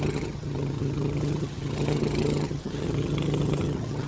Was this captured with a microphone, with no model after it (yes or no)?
no